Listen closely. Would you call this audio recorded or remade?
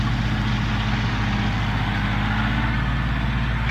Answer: recorded